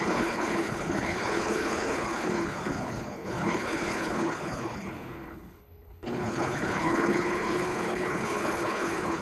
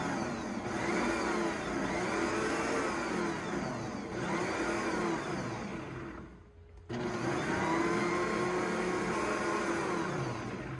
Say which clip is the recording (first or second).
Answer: second